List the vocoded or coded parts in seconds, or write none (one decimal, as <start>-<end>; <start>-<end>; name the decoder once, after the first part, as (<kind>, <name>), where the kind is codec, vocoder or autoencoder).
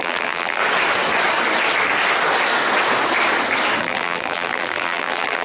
0.0-0.6 (vocoder, BigVGAN v2); 3.8-5.4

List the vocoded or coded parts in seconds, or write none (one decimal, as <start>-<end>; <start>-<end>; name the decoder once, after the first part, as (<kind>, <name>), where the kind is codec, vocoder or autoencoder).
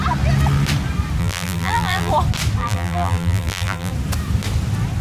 1.2-2.1 (vocoder, BigVGAN v2); 2.6-3.9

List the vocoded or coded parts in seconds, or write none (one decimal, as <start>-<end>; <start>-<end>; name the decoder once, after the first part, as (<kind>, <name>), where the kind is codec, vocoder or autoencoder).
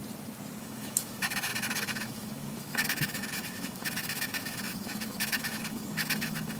0.6-6.6 (autoencoder, DAC-VAE)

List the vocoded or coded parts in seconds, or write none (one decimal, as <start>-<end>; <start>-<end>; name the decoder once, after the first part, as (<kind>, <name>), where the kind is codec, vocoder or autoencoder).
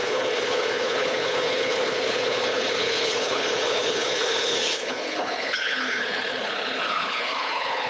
0.0-7.9 (codec, HILCodec)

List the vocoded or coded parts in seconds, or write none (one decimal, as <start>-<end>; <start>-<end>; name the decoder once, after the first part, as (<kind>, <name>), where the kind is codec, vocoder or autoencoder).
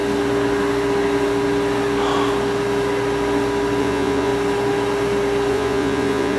3.8-4.3 (vocoder, Vocos); 5.5-6.4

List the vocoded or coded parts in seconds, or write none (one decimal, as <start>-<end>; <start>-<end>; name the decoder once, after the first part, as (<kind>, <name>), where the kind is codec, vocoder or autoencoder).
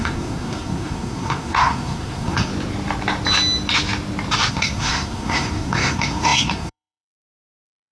0.0-2.5 (codec, SNAC); 4.5-7.9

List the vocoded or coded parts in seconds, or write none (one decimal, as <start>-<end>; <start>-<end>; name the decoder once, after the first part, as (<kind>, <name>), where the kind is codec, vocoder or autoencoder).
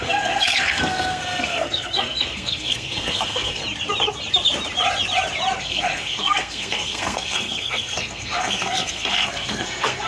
0.0-3.6 (codec, SNAC); 5.6-10.1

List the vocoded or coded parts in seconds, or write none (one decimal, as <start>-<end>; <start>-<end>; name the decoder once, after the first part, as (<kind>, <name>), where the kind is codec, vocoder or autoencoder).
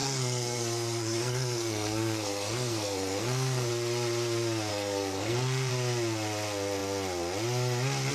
0.0-3.7 (codec, SNAC); 4.7-5.7